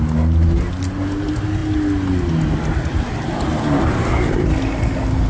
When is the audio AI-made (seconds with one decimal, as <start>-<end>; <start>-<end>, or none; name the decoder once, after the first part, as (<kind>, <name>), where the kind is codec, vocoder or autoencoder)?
none